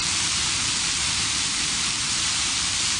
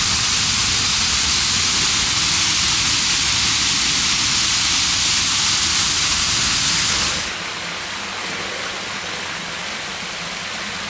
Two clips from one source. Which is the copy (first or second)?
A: first